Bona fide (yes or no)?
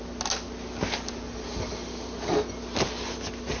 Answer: yes